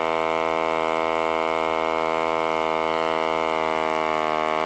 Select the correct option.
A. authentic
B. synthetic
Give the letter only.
A